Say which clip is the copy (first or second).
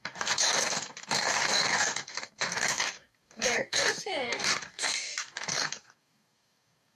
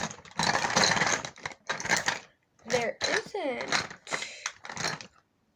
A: first